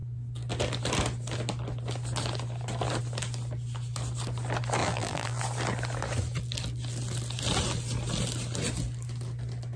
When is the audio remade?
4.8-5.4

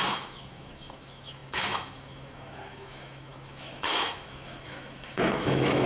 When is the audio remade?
0.0-5.9